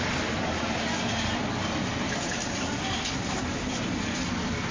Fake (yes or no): no